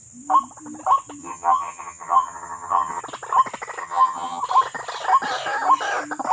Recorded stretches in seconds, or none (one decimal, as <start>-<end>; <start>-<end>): 0.0-1.2; 3.0-3.8; 4.4-6.3